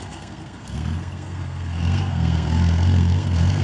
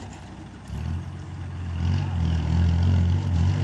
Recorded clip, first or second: second